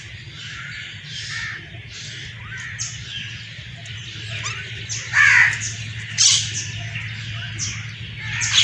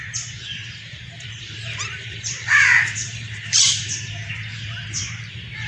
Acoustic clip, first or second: first